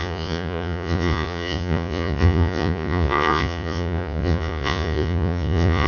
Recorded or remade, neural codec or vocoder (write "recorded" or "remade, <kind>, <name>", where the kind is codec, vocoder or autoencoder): remade, vocoder, Vocos